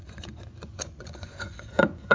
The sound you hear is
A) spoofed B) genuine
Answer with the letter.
A